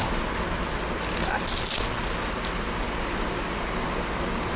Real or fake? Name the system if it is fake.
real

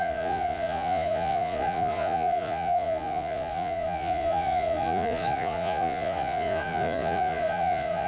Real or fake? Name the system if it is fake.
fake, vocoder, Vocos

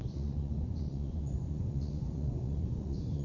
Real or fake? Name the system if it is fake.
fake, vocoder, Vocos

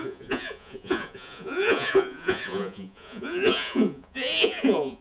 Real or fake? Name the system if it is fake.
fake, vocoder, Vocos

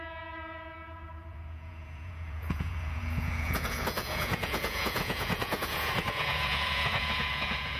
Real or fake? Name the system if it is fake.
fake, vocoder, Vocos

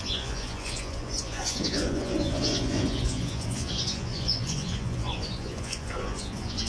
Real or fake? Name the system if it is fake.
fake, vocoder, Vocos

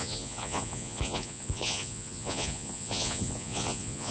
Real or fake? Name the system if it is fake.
fake, vocoder, Vocos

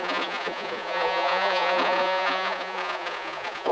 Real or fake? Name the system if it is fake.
fake, vocoder, Vocos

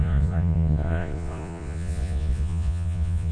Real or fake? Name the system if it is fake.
fake, vocoder, Vocos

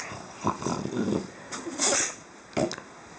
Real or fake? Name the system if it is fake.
real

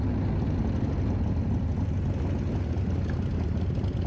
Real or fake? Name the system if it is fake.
real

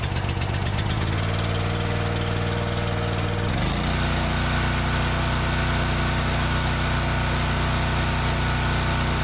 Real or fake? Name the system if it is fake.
real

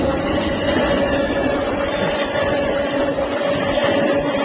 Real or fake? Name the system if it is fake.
fake, vocoder, Vocos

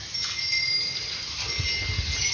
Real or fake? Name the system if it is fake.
real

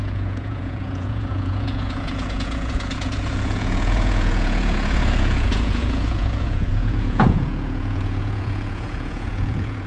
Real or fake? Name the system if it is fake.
fake, vocoder, Vocos